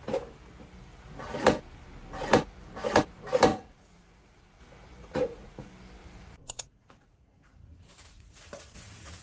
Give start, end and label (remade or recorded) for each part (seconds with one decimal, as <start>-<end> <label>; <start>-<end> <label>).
0.0-3.5 recorded; 3.5-4.6 remade; 4.6-5.0 recorded; 5.0-5.6 remade; 5.6-6.0 recorded; 6.0-9.2 remade